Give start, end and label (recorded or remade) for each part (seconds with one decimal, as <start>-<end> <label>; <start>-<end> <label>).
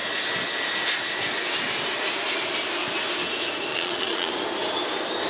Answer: 0.0-3.7 recorded; 3.7-4.3 remade; 4.3-5.3 recorded